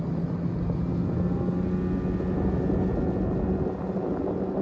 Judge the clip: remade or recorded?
recorded